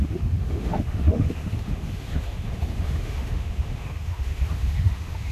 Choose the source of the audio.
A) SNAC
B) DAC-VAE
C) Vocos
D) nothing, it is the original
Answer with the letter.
B